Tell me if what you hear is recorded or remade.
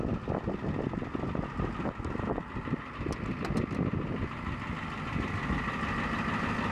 recorded